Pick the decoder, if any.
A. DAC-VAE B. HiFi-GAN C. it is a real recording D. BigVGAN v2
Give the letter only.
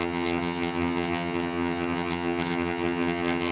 B